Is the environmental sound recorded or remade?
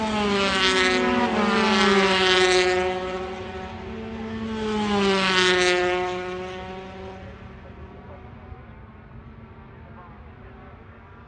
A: recorded